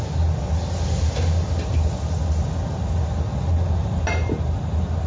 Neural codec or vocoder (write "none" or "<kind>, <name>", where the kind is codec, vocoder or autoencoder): none